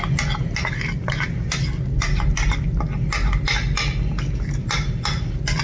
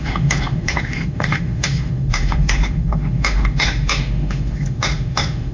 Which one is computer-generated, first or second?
second